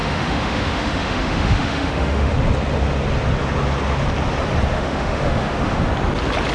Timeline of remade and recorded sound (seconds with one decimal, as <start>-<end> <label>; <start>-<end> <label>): 0.0-2.3 remade; 2.3-4.7 recorded; 4.7-5.9 remade; 5.9-6.5 recorded